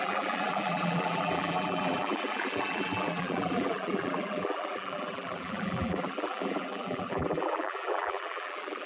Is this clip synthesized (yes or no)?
yes